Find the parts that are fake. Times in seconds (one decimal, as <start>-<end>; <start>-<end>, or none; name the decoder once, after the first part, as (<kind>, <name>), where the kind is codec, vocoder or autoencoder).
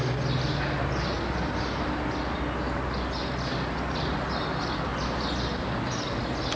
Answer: none